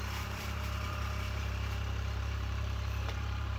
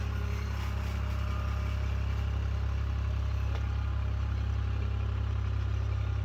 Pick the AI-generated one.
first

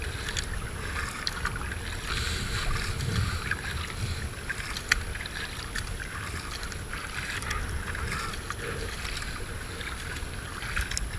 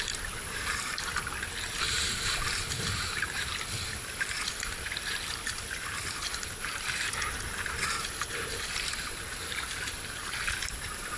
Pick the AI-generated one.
second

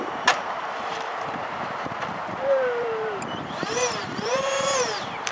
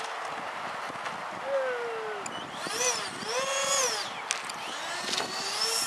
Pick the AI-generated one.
first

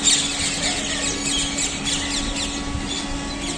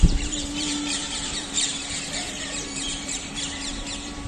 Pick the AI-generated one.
second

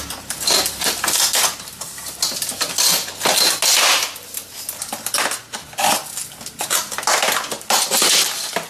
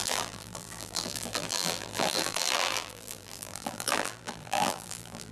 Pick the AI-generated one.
second